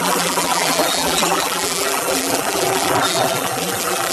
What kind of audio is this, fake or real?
fake